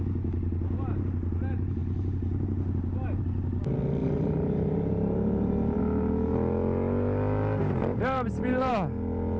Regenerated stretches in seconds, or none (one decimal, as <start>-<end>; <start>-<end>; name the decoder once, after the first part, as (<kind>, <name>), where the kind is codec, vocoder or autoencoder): 4.0-5.8 (vocoder, BigVGAN v2); 7.6-8.7